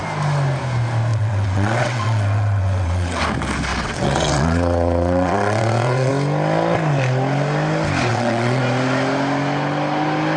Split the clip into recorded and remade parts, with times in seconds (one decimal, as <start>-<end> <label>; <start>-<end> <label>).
0.0-1.1 recorded; 1.1-3.2 remade; 3.2-3.7 recorded; 3.7-6.1 remade; 6.1-8.1 recorded; 8.1-8.6 remade; 8.6-10.4 recorded